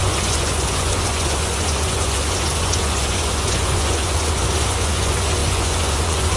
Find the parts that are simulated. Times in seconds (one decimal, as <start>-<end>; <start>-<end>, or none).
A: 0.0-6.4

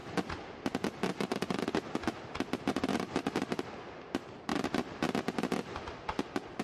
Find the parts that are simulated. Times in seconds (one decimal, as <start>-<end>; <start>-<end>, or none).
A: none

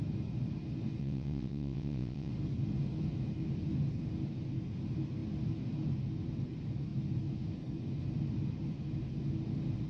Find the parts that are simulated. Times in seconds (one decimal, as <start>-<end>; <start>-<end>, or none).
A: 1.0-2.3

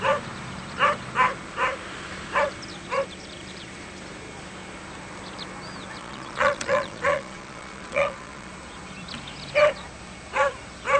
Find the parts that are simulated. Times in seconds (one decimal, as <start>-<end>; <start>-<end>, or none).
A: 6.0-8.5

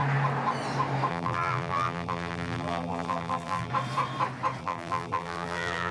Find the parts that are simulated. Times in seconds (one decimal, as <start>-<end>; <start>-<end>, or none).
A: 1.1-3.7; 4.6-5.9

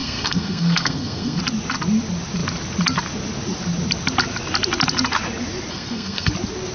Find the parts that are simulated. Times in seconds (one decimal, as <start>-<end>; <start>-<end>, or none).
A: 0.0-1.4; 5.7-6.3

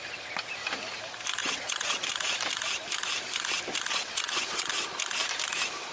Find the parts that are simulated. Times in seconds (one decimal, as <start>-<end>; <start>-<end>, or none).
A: 1.4-2.1; 3.9-4.7

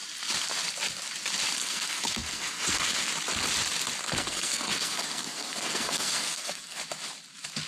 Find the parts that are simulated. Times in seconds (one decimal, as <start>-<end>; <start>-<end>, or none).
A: 1.6-3.1; 4.0-6.8